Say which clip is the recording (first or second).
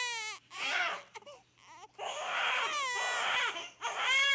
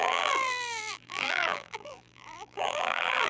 first